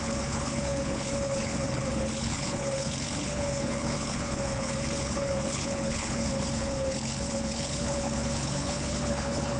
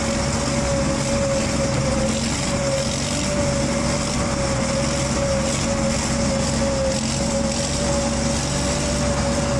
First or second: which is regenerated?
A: first